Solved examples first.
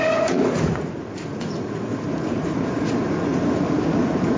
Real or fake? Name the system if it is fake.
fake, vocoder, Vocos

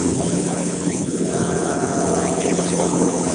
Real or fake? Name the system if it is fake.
fake, codec, HILCodec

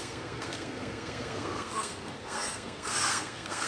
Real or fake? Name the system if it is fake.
fake, codec, SNAC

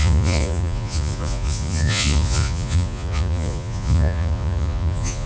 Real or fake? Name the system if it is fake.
fake, vocoder, Vocos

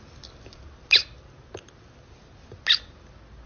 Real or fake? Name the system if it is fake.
real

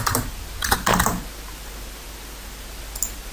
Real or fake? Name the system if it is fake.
real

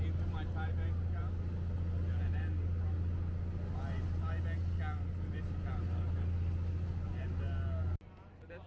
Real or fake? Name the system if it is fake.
real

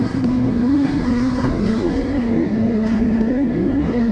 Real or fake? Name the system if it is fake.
fake, codec, SNAC